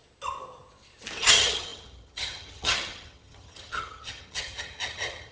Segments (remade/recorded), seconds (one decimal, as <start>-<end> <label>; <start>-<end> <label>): 0.0-1.2 recorded; 1.2-5.3 remade